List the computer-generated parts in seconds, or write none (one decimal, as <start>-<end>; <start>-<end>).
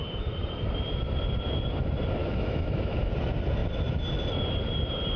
2.2-3.0